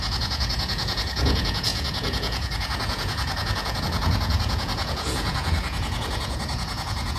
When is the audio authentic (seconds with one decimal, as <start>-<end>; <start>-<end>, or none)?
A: none

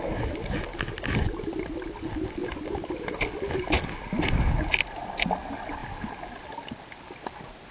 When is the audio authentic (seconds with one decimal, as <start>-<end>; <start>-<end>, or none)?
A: 0.0-7.7

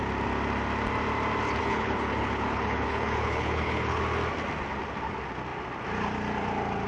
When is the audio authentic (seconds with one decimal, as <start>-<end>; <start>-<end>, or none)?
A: 0.0-1.6; 4.0-6.9

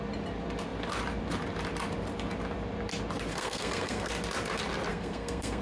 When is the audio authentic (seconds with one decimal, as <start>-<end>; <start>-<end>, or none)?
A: 0.0-3.3; 4.1-4.9

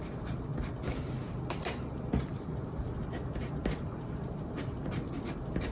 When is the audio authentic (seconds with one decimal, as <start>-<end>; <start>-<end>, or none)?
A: 0.5-2.2; 3.0-3.9